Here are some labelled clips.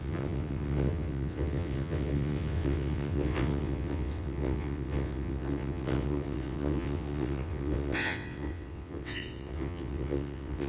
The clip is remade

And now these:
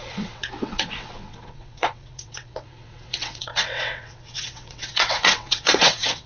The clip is remade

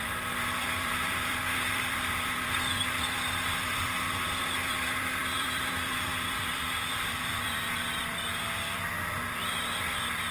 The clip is remade